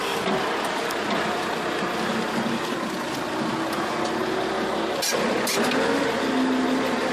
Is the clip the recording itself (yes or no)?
yes